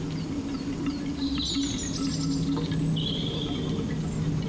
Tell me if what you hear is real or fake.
real